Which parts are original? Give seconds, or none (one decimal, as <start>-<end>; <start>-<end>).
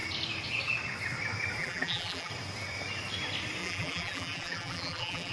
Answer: 0.0-1.6; 2.3-3.6